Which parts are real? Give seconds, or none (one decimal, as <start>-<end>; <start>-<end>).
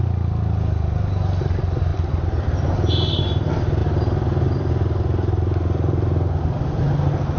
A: 0.0-3.8; 4.7-7.4